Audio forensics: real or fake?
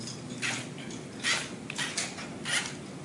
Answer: real